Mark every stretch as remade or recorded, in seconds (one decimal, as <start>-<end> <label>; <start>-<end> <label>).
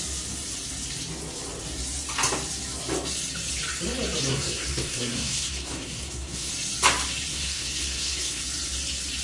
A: 0.0-4.3 recorded; 4.3-6.5 remade; 6.5-7.3 recorded; 7.3-8.4 remade; 8.4-9.2 recorded